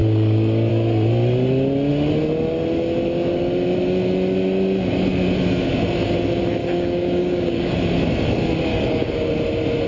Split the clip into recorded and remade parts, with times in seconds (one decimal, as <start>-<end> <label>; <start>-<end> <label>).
0.0-0.7 remade; 0.7-6.6 recorded; 6.6-7.8 remade; 7.8-8.7 recorded; 8.7-9.3 remade; 9.3-9.9 recorded